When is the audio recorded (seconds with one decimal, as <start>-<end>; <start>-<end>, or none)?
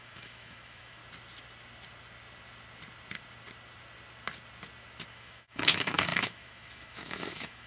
1.0-5.1